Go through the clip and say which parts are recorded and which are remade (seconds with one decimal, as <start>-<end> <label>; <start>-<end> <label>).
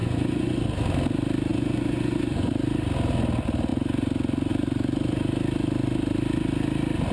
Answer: 0.0-0.6 remade; 0.6-1.5 recorded; 1.5-2.5 remade; 2.5-7.1 recorded